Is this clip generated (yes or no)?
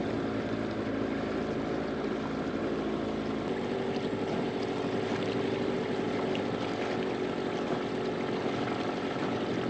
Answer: no